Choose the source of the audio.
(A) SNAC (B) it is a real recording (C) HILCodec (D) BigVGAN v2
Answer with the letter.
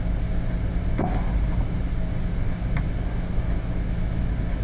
B